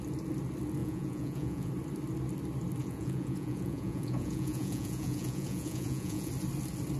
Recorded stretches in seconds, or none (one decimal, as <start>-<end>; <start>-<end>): 0.0-0.8; 1.7-2.8; 6.3-7.0